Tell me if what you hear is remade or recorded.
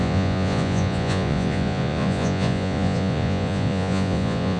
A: remade